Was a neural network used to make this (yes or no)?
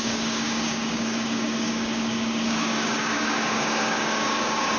yes